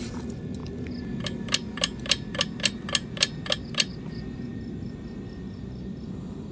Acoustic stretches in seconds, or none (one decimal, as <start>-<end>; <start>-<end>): 0.0-6.5